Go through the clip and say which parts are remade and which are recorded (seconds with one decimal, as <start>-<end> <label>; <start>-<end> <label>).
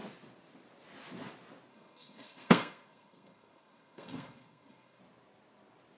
0.0-1.7 recorded; 1.7-5.0 remade; 5.0-6.0 recorded